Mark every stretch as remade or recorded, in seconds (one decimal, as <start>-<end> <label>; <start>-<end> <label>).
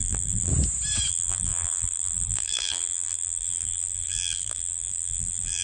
0.0-0.5 remade; 0.5-1.1 recorded; 1.1-5.6 remade